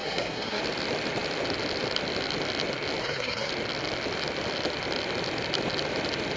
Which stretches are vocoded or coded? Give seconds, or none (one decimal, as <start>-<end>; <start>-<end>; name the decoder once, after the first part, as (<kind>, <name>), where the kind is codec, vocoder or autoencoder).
0.0-0.6 (codec, SNAC); 3.0-3.5